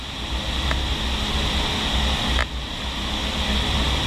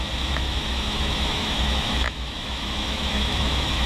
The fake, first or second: second